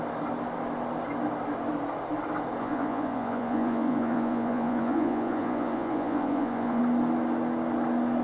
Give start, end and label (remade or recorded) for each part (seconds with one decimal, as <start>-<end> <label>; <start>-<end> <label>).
0.0-2.6 recorded; 2.6-6.8 remade; 6.8-8.2 recorded